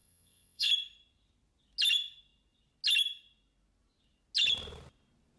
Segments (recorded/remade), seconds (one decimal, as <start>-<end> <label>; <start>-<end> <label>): 0.0-0.7 remade; 0.7-5.4 recorded